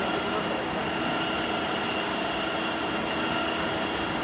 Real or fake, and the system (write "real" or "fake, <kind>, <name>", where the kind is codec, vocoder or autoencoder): real